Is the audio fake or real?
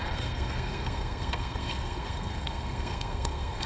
fake